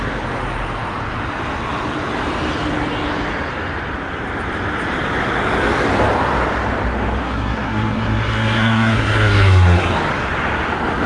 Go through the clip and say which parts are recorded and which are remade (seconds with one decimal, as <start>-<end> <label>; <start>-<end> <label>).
0.0-7.2 recorded; 7.2-9.9 remade; 9.9-11.1 recorded